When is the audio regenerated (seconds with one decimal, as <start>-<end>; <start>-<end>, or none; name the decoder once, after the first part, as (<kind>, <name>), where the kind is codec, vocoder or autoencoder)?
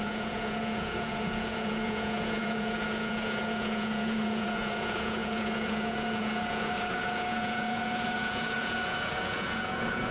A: 0.0-10.1 (vocoder, Vocos)